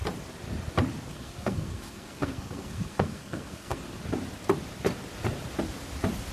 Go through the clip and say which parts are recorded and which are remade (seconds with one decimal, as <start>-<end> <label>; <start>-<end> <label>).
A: 0.0-1.1 recorded; 1.1-4.0 remade; 4.0-6.3 recorded